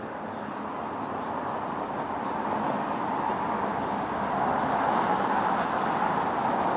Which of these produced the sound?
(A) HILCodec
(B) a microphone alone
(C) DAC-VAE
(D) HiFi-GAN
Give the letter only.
B